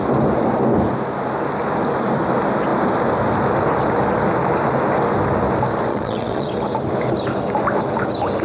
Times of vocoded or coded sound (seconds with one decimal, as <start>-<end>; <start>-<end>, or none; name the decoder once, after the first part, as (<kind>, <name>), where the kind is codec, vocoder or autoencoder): 5.9-6.5 (vocoder, WaveNeXt)